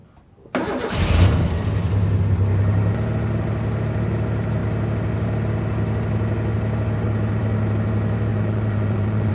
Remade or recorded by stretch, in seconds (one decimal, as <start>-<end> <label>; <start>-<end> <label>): 0.0-8.3 recorded; 8.3-9.3 remade